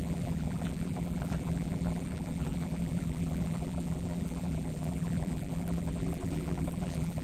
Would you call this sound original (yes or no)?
no